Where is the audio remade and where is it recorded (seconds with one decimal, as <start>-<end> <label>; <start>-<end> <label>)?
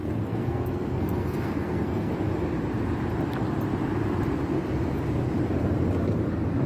0.0-2.1 remade; 2.1-6.7 recorded